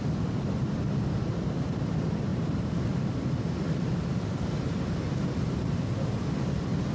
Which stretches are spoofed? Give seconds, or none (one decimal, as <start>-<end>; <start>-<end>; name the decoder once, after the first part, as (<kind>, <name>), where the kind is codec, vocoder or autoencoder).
none